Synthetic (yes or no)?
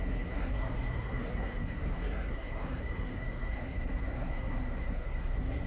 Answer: yes